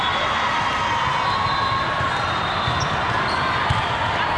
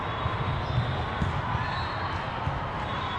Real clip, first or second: first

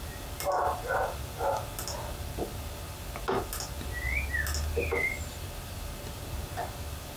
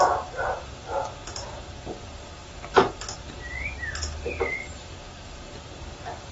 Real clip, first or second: first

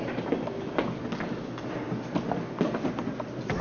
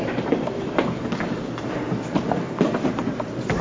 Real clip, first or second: first